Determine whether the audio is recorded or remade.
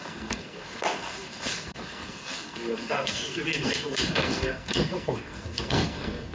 remade